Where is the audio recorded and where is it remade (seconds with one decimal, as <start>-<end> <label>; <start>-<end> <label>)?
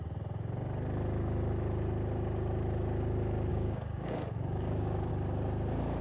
0.0-3.5 recorded; 3.5-5.1 remade; 5.1-6.0 recorded